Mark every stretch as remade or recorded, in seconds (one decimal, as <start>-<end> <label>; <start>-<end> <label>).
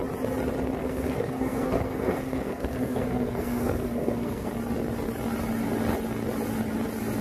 0.0-0.8 recorded; 0.8-4.5 remade; 4.5-7.2 recorded